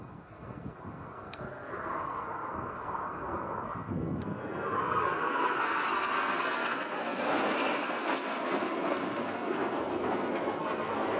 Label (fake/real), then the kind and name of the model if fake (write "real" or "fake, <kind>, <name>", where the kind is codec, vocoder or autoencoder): fake, codec, SNAC